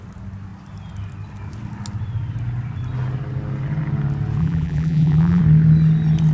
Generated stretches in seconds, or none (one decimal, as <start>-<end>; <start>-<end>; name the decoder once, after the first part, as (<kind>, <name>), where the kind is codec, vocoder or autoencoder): 4.4-5.4 (vocoder, BigVGAN v2)